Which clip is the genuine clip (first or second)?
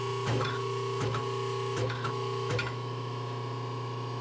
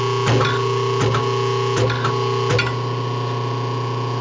second